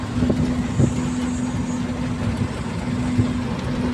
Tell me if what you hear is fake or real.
real